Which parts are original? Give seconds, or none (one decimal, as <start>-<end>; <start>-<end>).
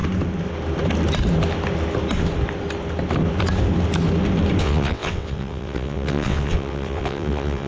0.0-4.6